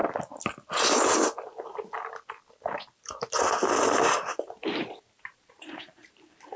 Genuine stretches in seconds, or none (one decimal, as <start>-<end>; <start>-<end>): 0.0-4.0